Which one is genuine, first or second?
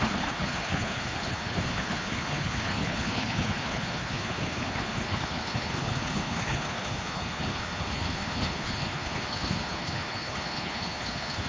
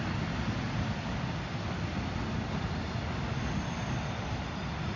second